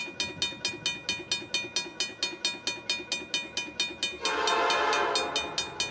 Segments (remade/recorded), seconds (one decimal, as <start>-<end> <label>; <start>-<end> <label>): 0.0-5.9 recorded